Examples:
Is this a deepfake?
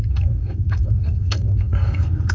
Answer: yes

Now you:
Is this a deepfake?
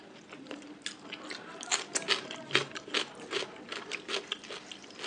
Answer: no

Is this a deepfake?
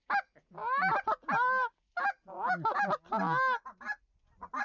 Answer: no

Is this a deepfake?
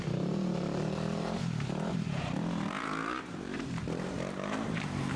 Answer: yes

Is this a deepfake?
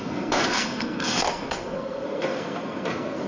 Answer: yes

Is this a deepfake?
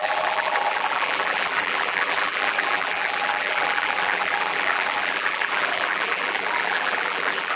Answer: yes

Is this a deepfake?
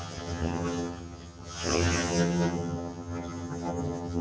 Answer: yes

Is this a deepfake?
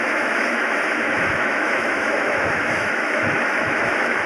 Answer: yes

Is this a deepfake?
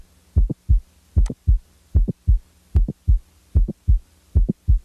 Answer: no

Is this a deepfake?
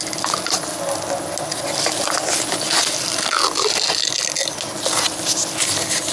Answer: no